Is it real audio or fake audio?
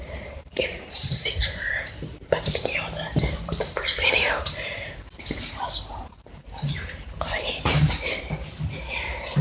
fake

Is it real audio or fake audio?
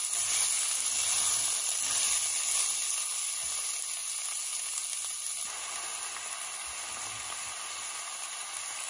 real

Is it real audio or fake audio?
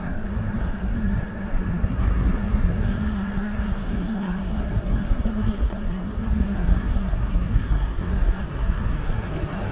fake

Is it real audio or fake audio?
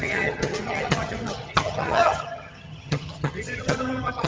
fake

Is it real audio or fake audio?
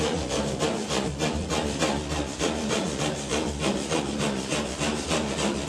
fake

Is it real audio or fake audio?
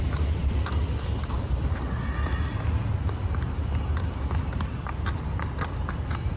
real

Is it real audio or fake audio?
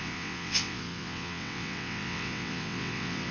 fake